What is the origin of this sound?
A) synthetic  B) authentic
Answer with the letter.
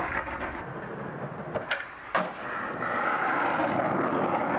B